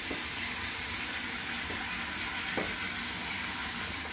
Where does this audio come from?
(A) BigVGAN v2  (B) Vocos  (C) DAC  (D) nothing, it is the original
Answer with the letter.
D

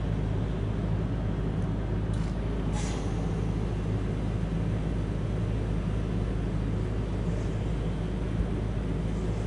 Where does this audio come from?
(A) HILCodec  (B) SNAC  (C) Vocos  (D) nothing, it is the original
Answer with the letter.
D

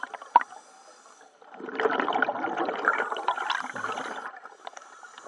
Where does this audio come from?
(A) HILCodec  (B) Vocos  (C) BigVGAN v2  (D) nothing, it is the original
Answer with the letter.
D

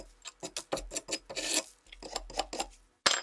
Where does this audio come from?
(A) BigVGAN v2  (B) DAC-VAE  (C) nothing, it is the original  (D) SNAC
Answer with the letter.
C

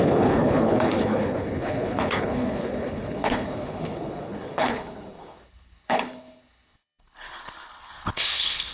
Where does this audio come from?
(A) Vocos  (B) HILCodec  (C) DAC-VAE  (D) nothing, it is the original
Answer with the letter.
B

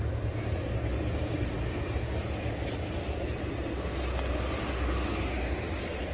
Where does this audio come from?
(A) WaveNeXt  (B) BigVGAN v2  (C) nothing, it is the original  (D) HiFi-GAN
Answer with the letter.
C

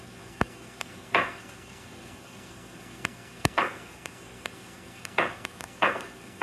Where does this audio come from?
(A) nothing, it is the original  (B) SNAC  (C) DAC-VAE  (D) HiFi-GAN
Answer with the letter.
B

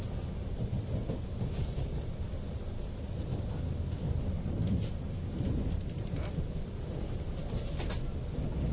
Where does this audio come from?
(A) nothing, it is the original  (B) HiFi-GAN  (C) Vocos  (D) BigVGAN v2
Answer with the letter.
A